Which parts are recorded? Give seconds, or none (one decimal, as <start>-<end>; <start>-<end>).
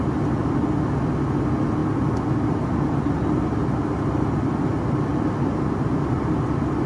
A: 0.0-6.9